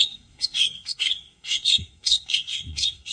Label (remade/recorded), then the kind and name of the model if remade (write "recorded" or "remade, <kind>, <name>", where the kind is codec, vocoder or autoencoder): remade, codec, SNAC